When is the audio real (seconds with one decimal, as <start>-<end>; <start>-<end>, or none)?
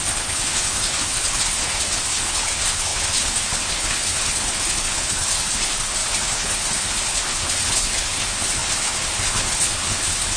none